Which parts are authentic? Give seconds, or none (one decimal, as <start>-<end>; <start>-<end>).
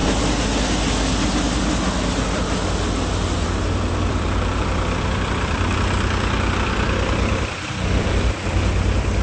0.0-3.1